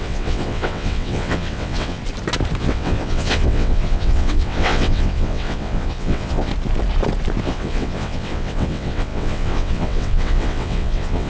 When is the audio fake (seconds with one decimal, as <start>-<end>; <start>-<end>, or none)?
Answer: 0.0-2.0; 2.6-6.5; 7.4-11.3